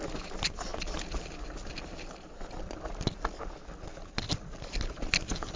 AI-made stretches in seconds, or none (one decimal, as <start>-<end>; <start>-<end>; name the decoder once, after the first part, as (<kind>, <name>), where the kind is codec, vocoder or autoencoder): none